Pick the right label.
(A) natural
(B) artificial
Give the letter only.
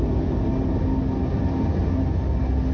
A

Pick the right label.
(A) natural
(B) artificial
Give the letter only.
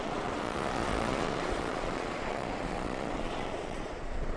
B